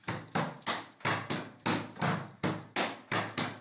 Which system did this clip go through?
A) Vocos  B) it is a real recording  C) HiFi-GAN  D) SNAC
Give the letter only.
B